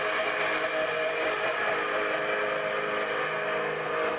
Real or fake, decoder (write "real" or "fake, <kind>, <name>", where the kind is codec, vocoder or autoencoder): real